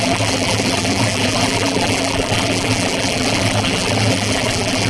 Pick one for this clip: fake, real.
fake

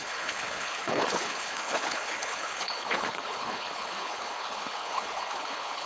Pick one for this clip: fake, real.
fake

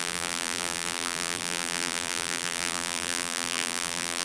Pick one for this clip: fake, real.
fake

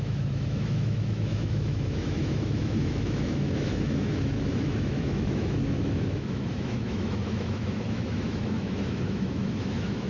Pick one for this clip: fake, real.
fake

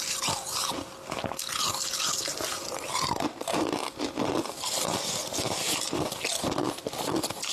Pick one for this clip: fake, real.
real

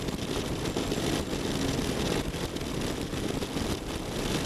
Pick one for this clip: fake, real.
real